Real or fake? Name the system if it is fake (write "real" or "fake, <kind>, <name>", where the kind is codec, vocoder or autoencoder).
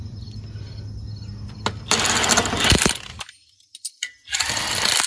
real